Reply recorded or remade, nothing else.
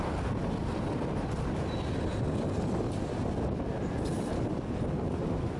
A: recorded